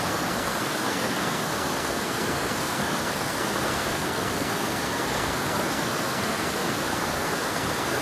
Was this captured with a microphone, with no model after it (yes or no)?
no